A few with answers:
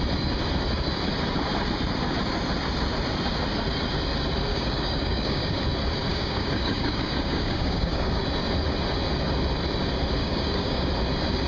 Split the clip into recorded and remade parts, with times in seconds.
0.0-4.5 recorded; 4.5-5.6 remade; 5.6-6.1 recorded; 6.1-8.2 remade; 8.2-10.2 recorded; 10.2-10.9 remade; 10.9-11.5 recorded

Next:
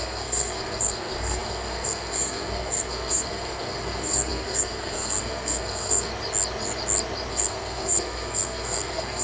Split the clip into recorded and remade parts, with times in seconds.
0.0-6.1 remade; 6.1-7.3 recorded; 7.3-9.2 remade

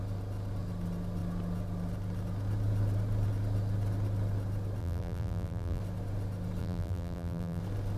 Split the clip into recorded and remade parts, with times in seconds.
0.0-4.8 recorded; 4.8-5.8 remade; 5.8-6.6 recorded; 6.6-7.6 remade; 7.6-8.0 recorded